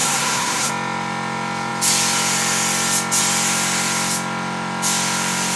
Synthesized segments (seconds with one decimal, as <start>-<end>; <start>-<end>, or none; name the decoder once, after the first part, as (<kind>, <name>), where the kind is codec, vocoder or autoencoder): 0.0-0.7 (codec, SNAC)